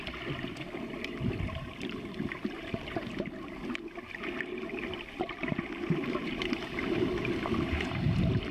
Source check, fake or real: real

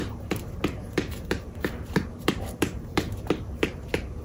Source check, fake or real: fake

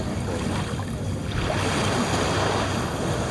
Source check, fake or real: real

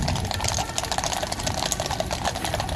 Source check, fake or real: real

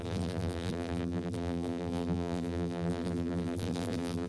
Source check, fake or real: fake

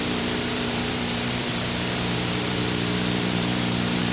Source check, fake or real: fake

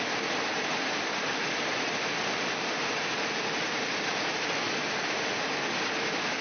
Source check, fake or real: real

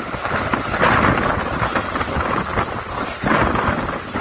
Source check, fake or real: real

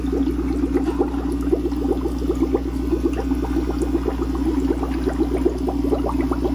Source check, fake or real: real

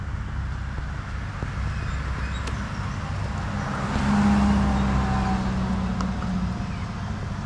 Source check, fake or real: real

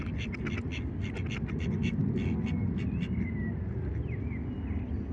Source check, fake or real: real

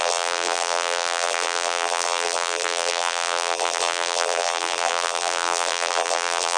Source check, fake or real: fake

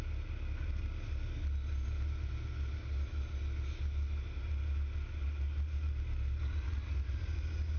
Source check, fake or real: real